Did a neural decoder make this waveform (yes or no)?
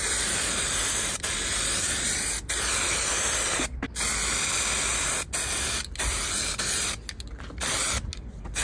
no